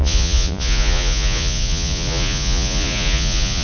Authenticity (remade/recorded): remade